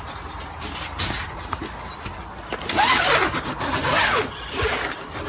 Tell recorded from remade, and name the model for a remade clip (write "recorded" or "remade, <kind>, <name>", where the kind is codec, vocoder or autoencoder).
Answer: recorded